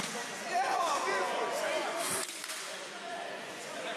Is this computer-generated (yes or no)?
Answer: yes